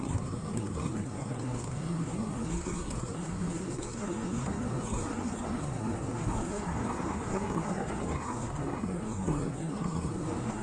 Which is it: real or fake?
fake